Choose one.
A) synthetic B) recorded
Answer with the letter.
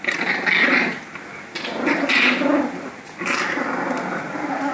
B